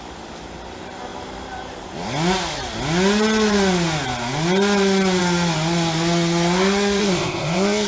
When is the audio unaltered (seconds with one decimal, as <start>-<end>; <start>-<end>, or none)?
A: 0.0-7.0